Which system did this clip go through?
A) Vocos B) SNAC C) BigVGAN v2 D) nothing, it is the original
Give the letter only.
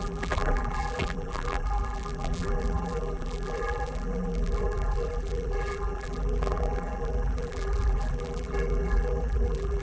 C